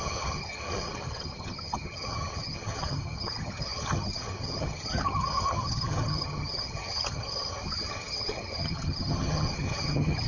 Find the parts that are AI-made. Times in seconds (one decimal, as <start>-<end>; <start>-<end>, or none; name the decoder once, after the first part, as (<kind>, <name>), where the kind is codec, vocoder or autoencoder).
0.0-10.3 (vocoder, HiFi-GAN)